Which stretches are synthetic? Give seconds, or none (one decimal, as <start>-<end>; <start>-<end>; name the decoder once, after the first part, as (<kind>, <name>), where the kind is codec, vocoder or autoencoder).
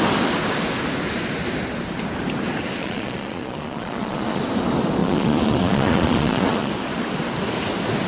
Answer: 2.8-4.4 (vocoder, Vocos); 5.0-6.7